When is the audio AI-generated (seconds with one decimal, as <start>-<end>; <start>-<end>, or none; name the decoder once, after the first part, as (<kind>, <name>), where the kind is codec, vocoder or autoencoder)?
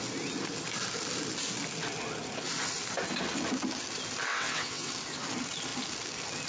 4.3-4.9 (vocoder, WaveNeXt)